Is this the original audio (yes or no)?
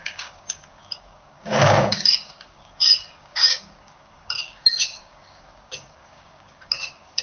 no